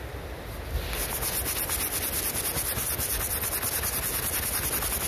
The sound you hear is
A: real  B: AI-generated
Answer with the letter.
A